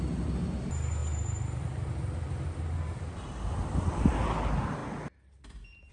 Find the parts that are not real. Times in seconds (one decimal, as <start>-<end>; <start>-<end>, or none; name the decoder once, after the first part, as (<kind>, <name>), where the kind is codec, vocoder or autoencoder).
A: none